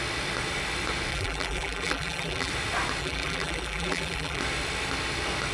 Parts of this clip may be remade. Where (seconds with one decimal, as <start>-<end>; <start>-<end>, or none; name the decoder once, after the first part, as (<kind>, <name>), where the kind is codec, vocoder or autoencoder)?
1.1-2.5 (vocoder, BigVGAN v2); 3.0-4.4